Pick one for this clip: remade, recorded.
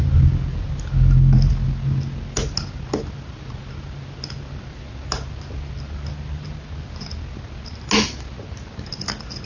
recorded